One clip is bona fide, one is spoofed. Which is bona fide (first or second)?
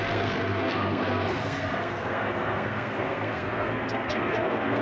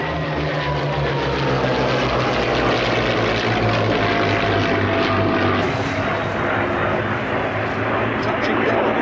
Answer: second